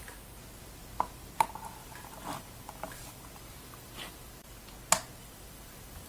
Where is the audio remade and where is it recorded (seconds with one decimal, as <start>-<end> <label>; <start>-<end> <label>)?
0.0-1.8 recorded; 1.8-4.3 remade; 4.3-5.2 recorded; 5.2-6.1 remade